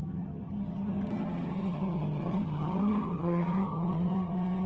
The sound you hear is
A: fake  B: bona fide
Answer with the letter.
A